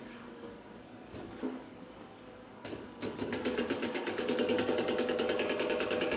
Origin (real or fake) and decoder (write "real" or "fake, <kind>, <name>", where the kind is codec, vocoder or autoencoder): fake, codec, DAC